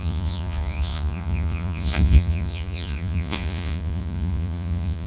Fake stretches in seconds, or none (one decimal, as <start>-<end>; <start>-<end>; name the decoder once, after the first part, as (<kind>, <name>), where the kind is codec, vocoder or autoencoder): 0.0-5.1 (vocoder, Vocos)